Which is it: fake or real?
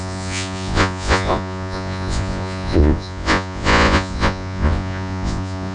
fake